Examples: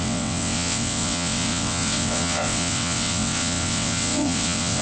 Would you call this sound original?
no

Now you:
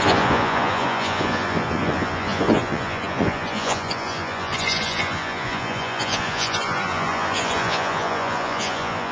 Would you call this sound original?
no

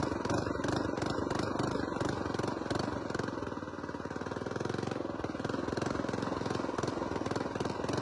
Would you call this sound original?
yes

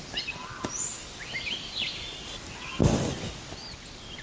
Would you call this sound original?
yes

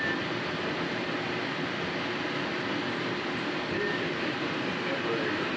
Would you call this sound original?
yes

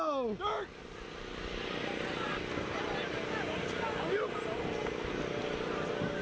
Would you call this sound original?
yes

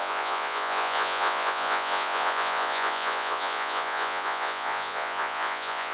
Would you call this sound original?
no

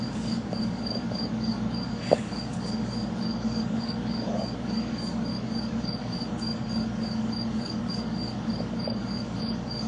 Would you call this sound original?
no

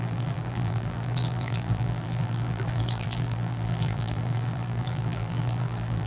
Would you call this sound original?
no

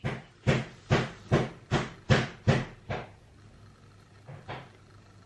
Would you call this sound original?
yes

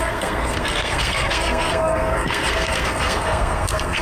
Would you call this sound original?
no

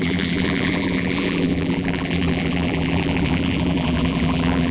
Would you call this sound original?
no